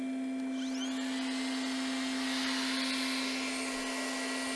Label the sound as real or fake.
real